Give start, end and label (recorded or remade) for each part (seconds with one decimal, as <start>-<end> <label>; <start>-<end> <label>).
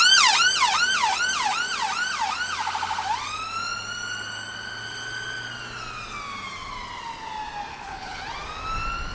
0.0-7.7 recorded; 7.7-8.2 remade; 8.2-9.1 recorded